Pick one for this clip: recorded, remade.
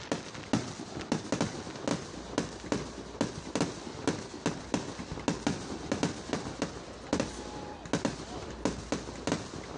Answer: recorded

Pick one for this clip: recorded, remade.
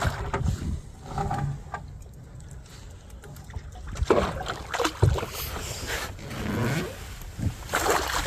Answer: recorded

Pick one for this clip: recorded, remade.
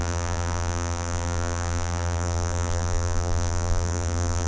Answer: remade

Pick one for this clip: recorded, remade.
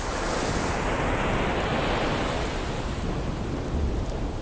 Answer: recorded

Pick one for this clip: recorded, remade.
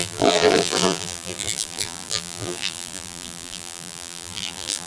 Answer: remade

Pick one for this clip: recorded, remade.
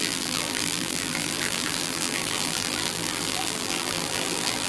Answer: remade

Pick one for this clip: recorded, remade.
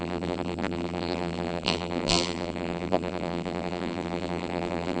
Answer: remade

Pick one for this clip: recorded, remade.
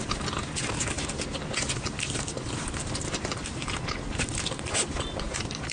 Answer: recorded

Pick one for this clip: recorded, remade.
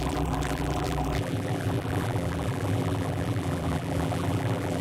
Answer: remade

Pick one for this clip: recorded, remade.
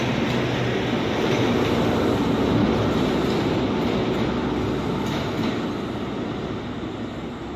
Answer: recorded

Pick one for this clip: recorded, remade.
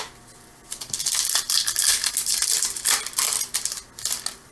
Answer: recorded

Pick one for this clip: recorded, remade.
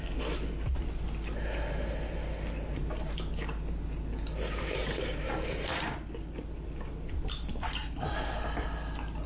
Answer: recorded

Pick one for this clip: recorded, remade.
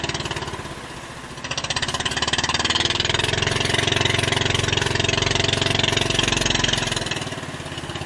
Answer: recorded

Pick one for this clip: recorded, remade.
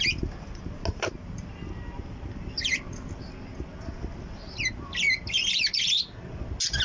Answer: recorded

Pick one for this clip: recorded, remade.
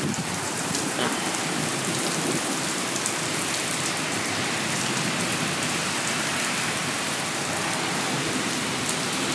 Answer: remade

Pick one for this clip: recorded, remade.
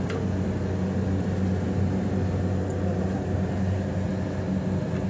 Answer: recorded